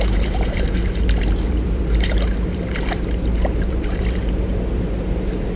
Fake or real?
fake